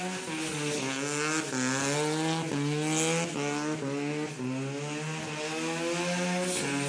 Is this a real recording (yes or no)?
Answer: yes